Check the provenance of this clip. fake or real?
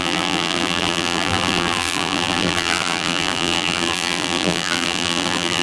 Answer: fake